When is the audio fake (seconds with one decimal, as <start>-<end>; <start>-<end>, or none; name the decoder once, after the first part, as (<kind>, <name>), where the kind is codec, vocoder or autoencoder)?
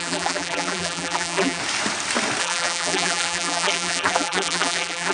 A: 0.0-1.6 (vocoder, BigVGAN v2); 2.4-5.1